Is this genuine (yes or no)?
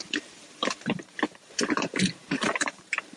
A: no